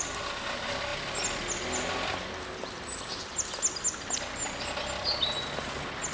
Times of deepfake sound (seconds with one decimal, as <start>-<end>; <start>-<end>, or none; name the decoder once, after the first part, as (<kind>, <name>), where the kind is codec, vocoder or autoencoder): none